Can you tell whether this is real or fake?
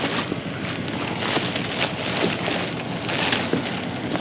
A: real